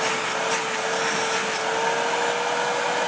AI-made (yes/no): no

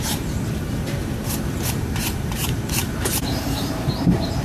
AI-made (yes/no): yes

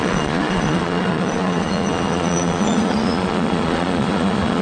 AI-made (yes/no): yes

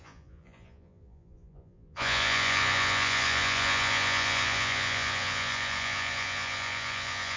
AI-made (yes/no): yes